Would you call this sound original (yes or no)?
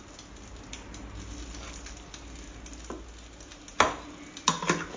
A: yes